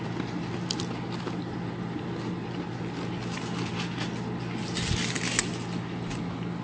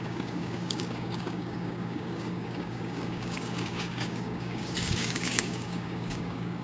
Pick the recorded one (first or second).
first